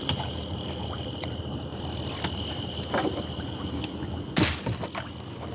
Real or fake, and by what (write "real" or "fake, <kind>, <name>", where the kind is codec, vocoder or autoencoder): real